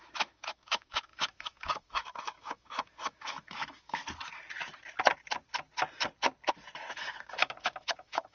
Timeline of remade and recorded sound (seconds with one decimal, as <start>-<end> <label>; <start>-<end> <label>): 0.0-4.0 remade; 4.0-6.9 recorded; 6.9-8.3 remade